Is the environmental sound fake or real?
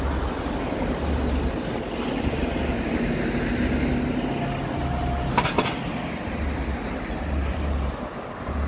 real